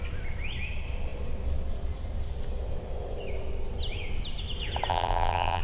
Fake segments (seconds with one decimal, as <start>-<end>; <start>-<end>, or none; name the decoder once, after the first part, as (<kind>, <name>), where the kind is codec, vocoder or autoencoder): 4.9-5.6 (vocoder, BigVGAN v2)

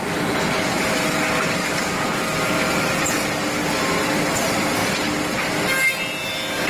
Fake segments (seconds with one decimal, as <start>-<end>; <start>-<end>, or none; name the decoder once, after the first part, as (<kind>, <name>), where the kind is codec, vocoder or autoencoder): 1.6-2.2 (codec, DAC)

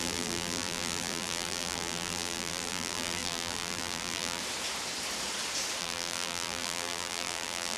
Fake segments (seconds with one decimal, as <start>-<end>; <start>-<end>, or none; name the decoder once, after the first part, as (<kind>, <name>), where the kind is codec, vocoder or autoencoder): 0.0-4.4 (vocoder, BigVGAN v2); 5.8-7.8

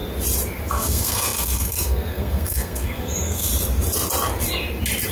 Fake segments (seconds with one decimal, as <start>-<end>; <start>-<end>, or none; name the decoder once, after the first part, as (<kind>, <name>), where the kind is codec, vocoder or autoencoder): 0.7-3.5 (codec, SNAC)